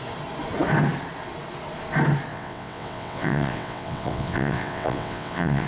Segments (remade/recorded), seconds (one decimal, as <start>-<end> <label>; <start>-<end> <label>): 0.0-2.3 recorded; 2.3-5.7 remade